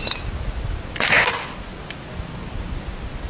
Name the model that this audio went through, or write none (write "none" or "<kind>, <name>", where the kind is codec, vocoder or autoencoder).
none